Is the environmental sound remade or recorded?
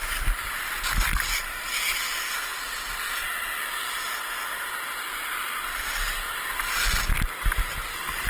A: recorded